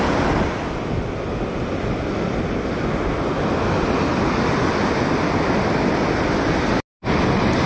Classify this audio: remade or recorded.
recorded